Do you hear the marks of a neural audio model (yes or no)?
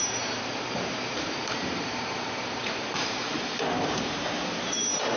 yes